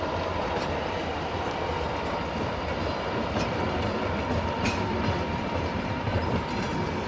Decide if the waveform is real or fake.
fake